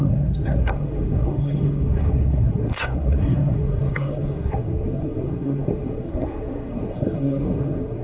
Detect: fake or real fake